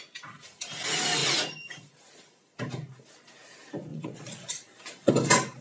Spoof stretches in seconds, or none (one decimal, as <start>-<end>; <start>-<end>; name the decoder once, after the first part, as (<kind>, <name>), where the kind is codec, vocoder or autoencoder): 3.9-5.1 (vocoder, Vocos)